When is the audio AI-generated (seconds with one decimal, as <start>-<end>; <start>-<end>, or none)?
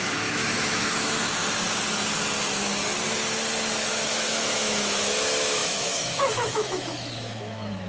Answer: 0.0-1.4; 3.9-7.9